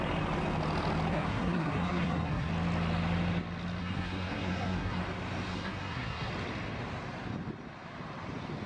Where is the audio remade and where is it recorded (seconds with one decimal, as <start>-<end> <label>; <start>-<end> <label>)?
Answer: 0.0-1.1 recorded; 1.1-2.5 remade; 2.5-3.8 recorded; 3.8-5.0 remade; 5.0-5.5 recorded; 5.5-6.3 remade; 6.3-8.7 recorded